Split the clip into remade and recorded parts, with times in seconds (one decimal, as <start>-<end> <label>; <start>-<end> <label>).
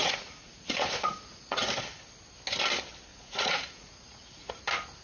0.0-1.7 remade; 1.7-3.1 recorded; 3.1-4.5 remade; 4.5-5.0 recorded